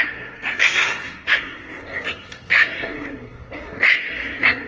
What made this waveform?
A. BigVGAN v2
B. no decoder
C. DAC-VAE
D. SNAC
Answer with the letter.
D